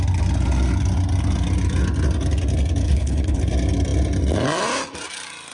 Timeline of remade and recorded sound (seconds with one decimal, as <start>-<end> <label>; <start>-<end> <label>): 0.0-2.8 recorded; 2.8-3.4 remade; 3.4-5.5 recorded